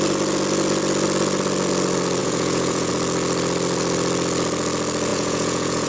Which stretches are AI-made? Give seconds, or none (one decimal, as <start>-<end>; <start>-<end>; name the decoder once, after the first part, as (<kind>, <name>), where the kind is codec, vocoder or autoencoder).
2.2-2.9 (vocoder, Vocos); 5.1-5.9